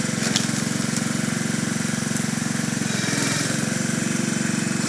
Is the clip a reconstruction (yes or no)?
no